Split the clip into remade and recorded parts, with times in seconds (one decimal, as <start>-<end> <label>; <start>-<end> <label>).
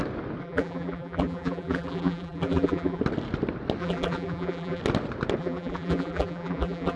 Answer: 0.0-0.4 recorded; 0.4-3.0 remade; 3.0-3.8 recorded; 3.8-4.8 remade; 4.8-5.4 recorded; 5.4-7.0 remade